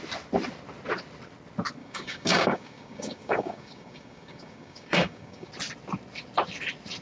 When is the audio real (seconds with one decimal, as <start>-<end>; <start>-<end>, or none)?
0.0-1.8; 5.5-7.0